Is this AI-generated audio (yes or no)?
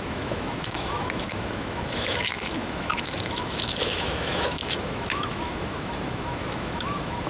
yes